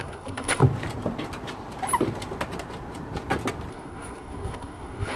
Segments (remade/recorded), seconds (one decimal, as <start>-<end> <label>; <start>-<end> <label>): 0.0-0.6 remade; 0.6-3.7 recorded; 3.7-5.2 remade